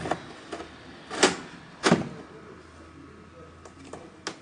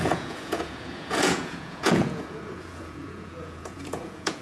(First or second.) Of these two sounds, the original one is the first